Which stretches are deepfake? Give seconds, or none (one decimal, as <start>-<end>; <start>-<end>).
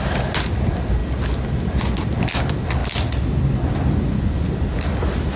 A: none